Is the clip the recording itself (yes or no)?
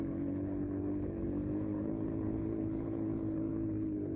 no